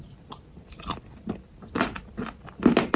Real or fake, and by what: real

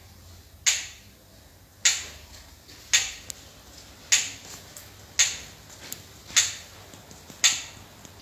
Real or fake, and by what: real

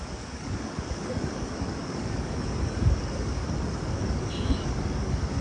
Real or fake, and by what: fake, codec, DAC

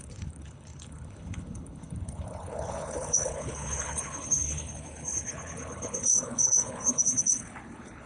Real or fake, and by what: fake, codec, HILCodec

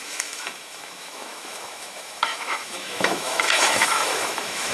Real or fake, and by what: fake, autoencoder, DAC-VAE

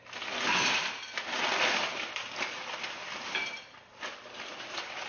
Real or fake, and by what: real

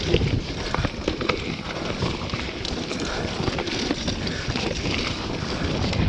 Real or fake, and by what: fake, vocoder, BigVGAN v2